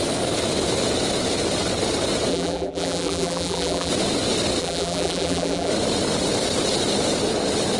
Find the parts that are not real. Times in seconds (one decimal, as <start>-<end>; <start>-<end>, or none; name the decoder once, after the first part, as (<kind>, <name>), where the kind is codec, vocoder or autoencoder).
2.3-3.9 (vocoder, BigVGAN v2); 4.6-5.7